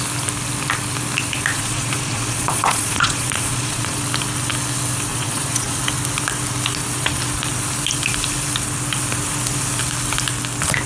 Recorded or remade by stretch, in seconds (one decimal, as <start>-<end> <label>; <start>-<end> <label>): 0.0-1.5 recorded; 1.5-4.0 remade; 4.0-5.1 recorded; 5.1-5.8 remade; 5.8-10.9 recorded